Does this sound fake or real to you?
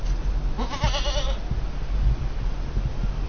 real